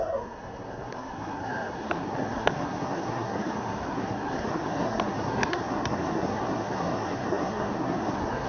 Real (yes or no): no